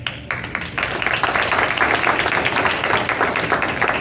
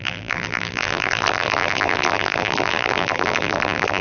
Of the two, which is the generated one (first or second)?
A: second